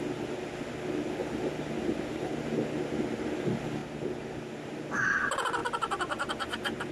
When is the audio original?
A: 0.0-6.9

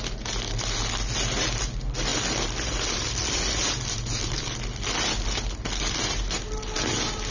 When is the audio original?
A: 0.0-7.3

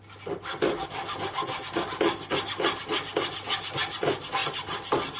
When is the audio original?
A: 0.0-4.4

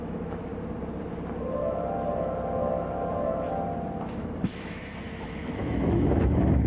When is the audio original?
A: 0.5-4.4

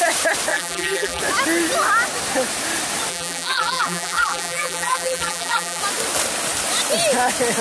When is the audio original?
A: 0.0-0.5; 1.2-3.1; 5.8-7.6

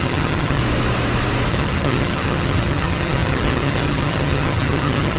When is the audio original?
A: 0.6-1.5

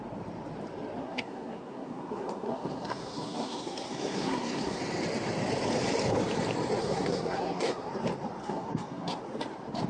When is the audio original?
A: 0.0-1.0; 4.8-6.8; 7.9-8.4; 9.2-9.9

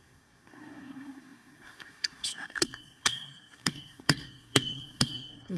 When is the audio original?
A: none